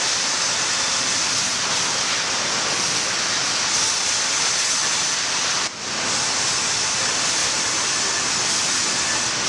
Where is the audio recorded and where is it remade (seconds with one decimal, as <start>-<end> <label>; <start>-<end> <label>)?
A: 0.0-9.5 recorded